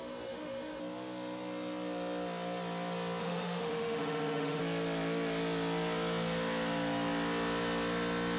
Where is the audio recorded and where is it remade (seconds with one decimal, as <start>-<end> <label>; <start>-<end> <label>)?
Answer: 0.0-0.8 remade; 0.8-3.2 recorded; 3.2-4.6 remade; 4.6-8.4 recorded